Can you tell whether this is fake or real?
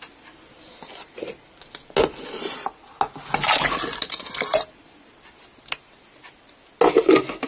real